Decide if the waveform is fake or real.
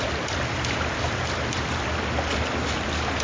fake